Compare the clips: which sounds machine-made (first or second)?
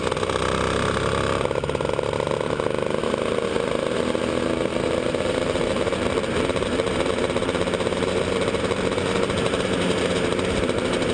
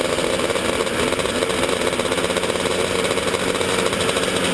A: first